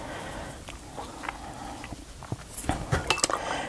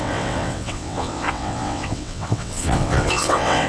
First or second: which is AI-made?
second